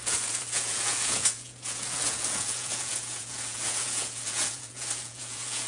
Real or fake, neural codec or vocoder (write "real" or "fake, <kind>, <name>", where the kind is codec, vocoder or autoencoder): fake, vocoder, Vocos